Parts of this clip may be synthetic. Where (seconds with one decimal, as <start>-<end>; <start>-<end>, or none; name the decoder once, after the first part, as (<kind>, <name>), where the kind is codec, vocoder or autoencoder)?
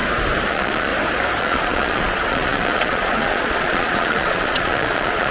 0.5-0.9 (vocoder, Vocos); 1.4-5.3